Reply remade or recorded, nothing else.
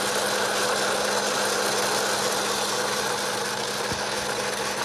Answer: recorded